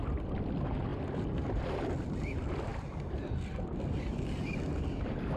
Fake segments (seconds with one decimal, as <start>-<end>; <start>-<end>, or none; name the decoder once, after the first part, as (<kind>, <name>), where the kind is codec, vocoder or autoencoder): none

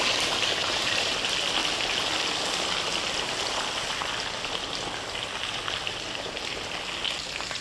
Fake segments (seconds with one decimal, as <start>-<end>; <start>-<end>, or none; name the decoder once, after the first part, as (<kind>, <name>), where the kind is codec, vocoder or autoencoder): 0.6-1.1 (vocoder, BigVGAN v2)

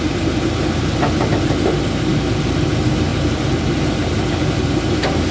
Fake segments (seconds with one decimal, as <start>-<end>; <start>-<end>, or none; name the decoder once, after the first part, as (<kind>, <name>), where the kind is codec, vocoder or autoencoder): none